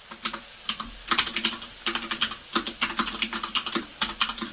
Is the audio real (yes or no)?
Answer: yes